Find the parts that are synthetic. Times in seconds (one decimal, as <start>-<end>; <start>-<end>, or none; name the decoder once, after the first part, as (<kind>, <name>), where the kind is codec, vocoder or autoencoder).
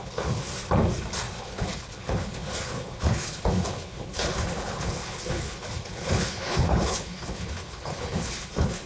0.0-0.5 (codec, HILCodec); 1.4-8.9